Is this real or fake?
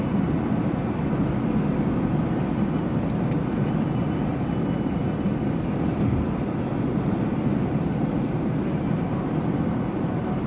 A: real